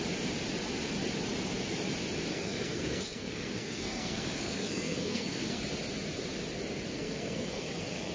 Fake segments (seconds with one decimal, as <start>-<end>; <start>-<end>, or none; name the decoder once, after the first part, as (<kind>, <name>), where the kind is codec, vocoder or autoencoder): 2.3-5.6 (codec, SNAC); 6.9-8.1